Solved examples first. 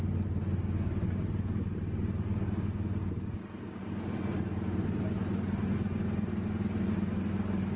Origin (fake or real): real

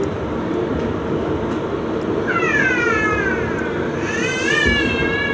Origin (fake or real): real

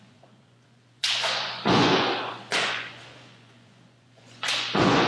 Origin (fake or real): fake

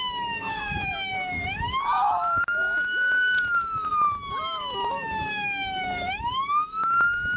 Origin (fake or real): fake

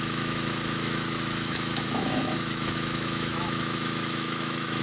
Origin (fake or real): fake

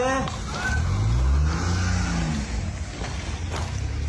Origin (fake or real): real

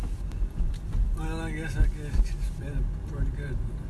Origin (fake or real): real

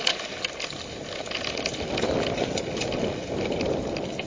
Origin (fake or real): real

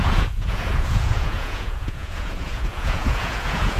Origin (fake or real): fake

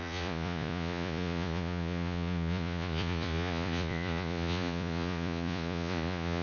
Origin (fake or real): fake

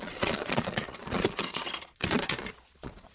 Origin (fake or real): fake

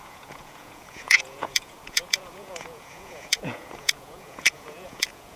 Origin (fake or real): fake